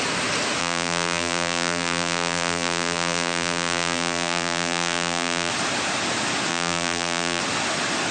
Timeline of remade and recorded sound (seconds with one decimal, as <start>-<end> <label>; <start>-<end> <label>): 0.0-0.6 recorded; 0.6-5.5 remade; 5.5-6.5 recorded; 6.5-7.4 remade; 7.4-8.1 recorded